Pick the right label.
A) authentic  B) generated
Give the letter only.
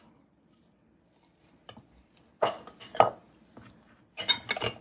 A